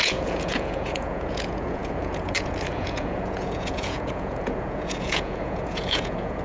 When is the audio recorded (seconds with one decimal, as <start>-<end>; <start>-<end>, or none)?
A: none